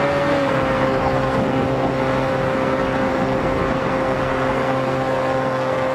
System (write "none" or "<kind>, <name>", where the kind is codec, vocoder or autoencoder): codec, SNAC